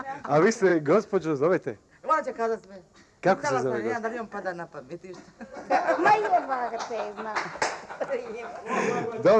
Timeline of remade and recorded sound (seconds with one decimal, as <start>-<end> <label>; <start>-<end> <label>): 0.0-9.4 recorded